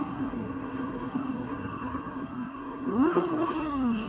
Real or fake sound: fake